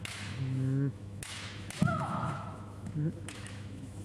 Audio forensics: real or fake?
fake